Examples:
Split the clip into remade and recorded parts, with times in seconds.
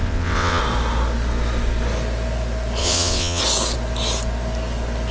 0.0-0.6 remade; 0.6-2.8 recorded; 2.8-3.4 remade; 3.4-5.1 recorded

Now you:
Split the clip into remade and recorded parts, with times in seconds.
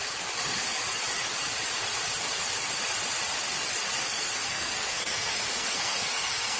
0.0-4.0 recorded; 4.0-6.6 remade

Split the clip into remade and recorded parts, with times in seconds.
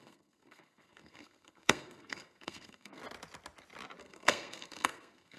0.0-3.0 remade; 3.0-4.0 recorded; 4.0-5.4 remade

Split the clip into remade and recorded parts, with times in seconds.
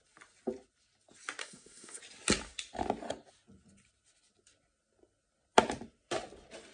0.0-1.4 recorded; 1.4-2.0 remade; 2.0-6.7 recorded